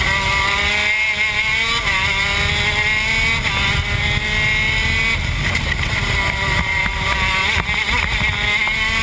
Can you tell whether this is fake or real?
real